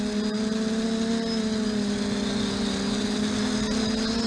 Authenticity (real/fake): real